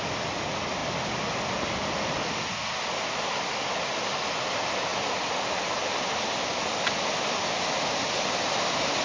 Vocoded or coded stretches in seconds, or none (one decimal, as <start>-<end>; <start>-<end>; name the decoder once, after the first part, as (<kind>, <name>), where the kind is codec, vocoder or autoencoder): none